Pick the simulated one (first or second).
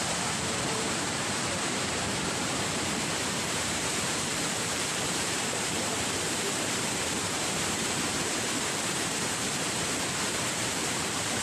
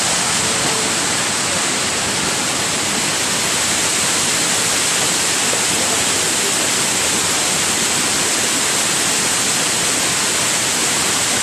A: first